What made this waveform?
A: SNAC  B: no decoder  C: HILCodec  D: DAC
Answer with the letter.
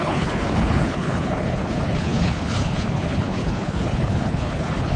C